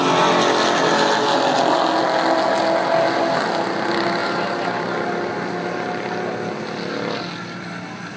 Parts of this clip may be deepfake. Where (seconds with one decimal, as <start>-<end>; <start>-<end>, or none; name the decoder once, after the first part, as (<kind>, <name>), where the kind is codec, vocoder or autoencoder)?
none

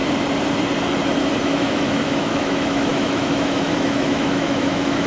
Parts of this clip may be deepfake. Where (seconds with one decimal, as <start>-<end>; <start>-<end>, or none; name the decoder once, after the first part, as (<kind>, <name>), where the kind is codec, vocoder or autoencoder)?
1.4-5.1 (autoencoder, DAC-VAE)

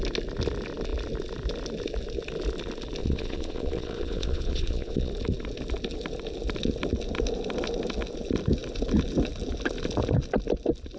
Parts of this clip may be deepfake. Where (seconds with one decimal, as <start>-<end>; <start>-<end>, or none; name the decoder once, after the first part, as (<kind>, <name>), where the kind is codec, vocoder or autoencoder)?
3.0-5.1 (vocoder, Vocos)